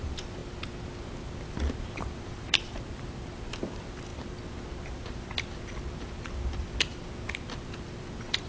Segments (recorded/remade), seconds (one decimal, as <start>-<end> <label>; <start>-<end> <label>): 0.0-0.4 remade; 0.4-1.3 recorded; 1.3-4.1 remade; 4.1-7.5 recorded; 7.5-8.5 remade